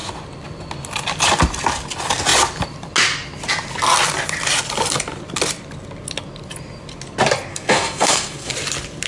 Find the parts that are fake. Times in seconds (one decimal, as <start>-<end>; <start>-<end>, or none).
7.5-8.5